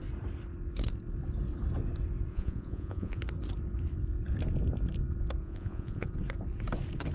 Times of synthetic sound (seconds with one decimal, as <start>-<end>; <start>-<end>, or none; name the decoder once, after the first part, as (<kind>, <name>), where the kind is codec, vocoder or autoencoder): 2.3-3.2 (vocoder, Vocos); 5.4-6.1